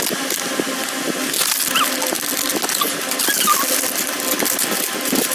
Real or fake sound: real